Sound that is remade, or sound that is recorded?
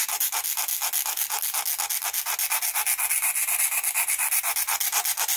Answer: recorded